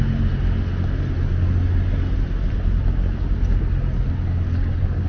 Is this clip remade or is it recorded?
recorded